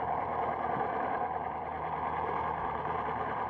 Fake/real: fake